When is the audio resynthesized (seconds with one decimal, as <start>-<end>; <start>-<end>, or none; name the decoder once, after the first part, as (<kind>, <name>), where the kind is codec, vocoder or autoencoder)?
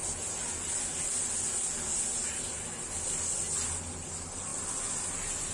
none